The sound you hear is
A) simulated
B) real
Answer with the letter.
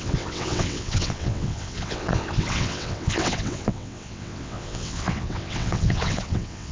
A